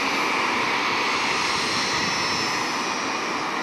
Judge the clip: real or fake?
real